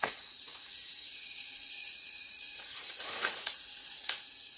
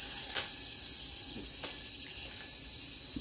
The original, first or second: second